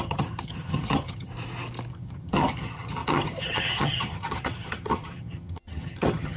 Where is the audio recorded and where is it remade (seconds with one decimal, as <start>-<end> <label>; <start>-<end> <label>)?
0.0-1.3 remade; 1.3-1.9 recorded; 1.9-6.4 remade